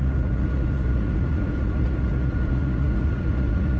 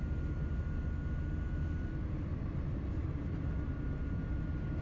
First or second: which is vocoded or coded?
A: first